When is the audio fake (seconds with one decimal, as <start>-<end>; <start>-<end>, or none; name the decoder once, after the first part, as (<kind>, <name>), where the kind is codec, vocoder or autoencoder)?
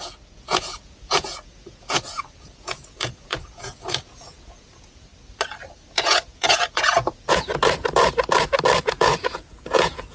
0.0-5.1 (vocoder, Vocos); 5.9-7.5; 8.8-10.1